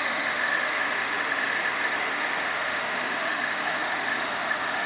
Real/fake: fake